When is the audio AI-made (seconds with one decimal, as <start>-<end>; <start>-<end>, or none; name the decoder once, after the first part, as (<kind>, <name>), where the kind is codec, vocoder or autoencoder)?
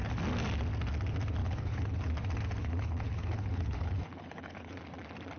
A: 1.4-2.1 (codec, HILCodec); 2.6-4.8